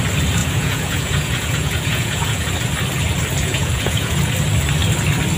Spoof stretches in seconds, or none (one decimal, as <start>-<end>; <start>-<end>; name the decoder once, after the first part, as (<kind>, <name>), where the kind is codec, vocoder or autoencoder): 0.4-2.5 (vocoder, Vocos); 3.4-4.2